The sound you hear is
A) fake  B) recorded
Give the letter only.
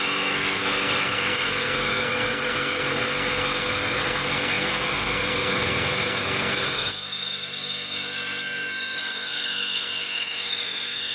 A